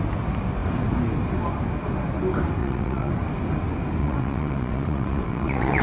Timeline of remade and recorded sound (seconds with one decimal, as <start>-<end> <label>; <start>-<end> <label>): 0.0-2.6 recorded; 2.6-3.1 remade; 3.1-4.0 recorded; 4.0-5.8 remade